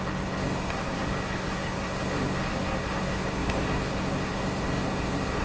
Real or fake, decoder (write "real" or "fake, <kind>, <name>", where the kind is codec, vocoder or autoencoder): fake, codec, SNAC